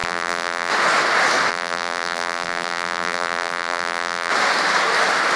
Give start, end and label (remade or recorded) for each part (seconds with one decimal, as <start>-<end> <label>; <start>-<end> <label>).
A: 0.0-0.7 remade; 0.7-1.5 recorded; 1.5-4.3 remade; 4.3-5.4 recorded